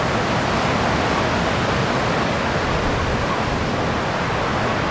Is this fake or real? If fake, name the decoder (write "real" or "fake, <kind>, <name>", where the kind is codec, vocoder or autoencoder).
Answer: real